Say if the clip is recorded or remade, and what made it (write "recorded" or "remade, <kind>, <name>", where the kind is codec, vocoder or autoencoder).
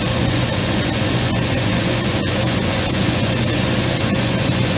remade, vocoder, Vocos